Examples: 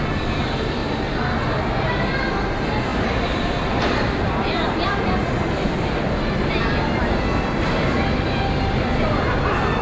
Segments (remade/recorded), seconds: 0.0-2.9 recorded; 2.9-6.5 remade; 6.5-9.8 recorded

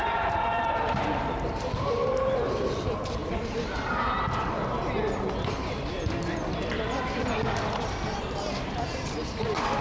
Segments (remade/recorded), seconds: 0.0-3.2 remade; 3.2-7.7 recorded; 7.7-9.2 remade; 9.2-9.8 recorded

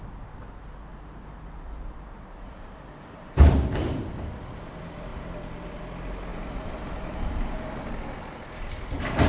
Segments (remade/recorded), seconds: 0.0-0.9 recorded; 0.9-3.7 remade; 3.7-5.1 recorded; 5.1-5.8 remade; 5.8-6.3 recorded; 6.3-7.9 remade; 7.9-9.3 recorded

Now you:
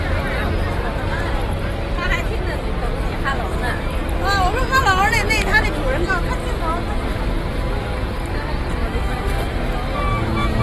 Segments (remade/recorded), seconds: 0.0-10.6 recorded